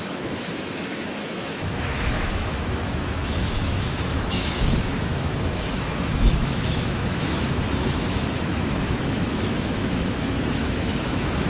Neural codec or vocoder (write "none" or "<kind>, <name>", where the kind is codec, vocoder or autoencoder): autoencoder, DAC-VAE